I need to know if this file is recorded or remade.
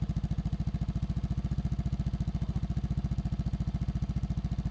recorded